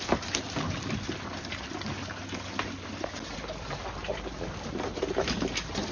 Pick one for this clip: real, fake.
real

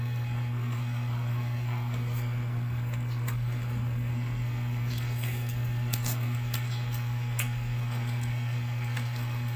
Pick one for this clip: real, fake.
fake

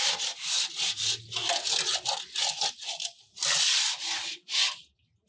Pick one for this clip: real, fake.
real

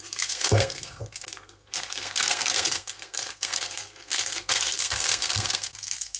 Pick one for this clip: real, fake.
fake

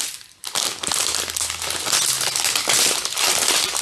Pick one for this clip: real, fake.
real